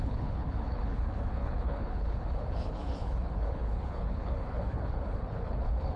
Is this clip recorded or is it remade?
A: remade